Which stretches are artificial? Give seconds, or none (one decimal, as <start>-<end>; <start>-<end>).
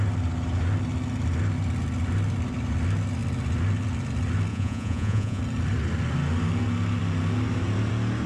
4.5-5.4